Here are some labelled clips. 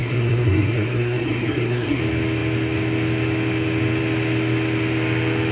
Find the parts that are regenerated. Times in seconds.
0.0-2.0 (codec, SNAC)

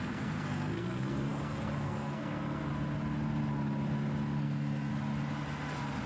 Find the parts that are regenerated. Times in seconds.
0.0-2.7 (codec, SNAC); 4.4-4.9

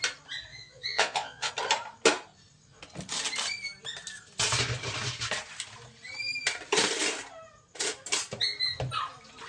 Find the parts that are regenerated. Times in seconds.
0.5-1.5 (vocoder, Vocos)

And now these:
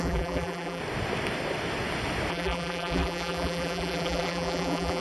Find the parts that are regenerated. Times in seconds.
0.0-0.8 (vocoder, BigVGAN v2); 2.3-5.0